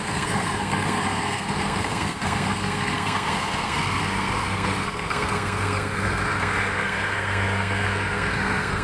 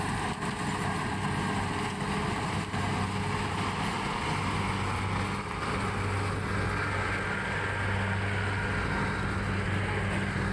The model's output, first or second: first